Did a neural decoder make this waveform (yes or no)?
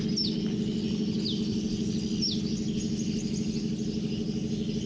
no